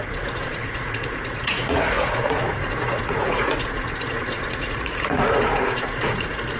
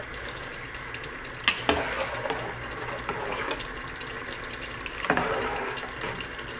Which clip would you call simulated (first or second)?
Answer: first